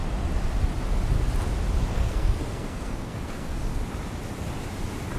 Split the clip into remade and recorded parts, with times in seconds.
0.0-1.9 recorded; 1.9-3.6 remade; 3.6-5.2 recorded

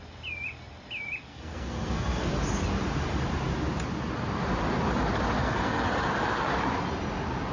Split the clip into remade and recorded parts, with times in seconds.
0.0-1.3 recorded; 1.3-2.3 remade; 2.3-5.4 recorded; 5.4-5.9 remade; 5.9-7.5 recorded